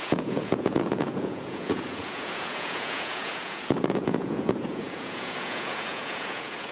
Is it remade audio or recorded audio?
remade